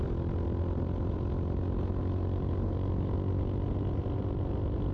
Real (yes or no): yes